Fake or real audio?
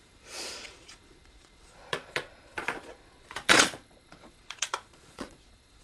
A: fake